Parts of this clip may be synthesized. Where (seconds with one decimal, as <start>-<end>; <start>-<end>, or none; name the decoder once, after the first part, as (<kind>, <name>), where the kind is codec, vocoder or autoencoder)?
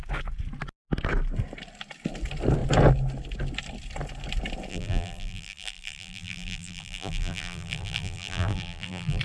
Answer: 4.7-9.2 (vocoder, BigVGAN v2)